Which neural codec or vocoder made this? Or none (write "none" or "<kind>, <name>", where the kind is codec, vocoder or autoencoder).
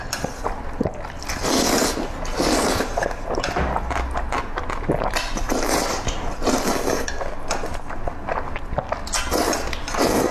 none